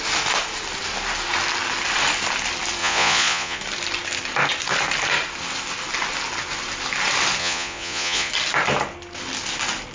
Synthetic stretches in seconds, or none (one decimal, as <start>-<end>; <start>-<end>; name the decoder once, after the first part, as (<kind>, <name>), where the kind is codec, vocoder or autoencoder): 2.8-3.6 (vocoder, Vocos); 7.4-8.3